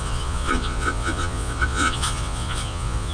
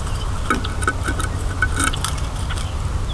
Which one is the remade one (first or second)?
first